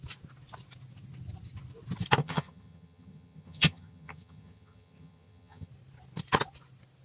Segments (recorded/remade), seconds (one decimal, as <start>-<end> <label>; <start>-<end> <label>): 0.0-2.2 recorded; 2.2-5.7 remade; 5.7-7.0 recorded

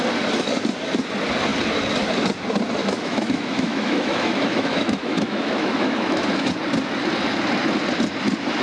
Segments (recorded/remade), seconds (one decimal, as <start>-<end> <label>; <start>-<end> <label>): 0.0-2.8 recorded; 2.8-6.5 remade; 6.5-8.6 recorded

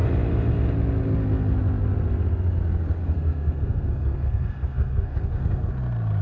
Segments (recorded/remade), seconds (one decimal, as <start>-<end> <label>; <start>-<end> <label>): 0.0-3.0 recorded; 3.0-5.7 remade; 5.7-6.2 recorded

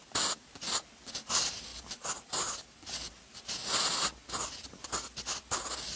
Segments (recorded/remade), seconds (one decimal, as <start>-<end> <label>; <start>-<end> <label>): 0.0-6.0 recorded

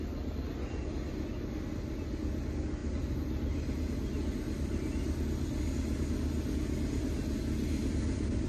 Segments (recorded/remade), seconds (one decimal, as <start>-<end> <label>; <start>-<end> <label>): 0.0-8.5 recorded

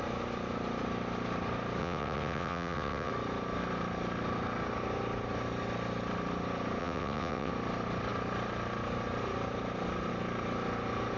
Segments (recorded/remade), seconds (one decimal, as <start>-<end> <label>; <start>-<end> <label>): 0.0-1.8 recorded; 1.8-3.1 remade; 3.1-6.8 recorded; 6.8-7.5 remade; 7.5-11.2 recorded

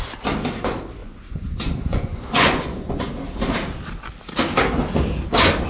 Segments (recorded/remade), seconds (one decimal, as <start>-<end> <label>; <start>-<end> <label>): 0.0-1.0 recorded; 1.0-3.1 remade; 3.1-5.7 recorded

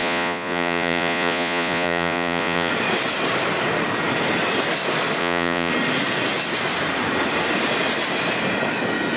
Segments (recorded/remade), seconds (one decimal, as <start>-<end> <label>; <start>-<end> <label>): 0.0-2.7 remade; 2.7-5.2 recorded; 5.2-5.7 remade; 5.7-9.2 recorded